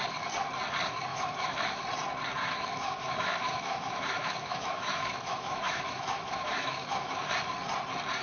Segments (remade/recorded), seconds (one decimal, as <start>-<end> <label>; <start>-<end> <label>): 0.0-1.1 recorded; 1.1-1.8 remade; 1.8-2.4 recorded; 2.4-7.3 remade; 7.3-8.2 recorded